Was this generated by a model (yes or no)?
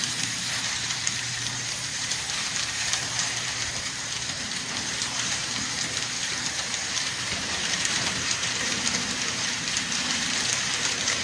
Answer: yes